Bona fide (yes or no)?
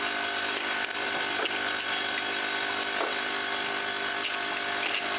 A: yes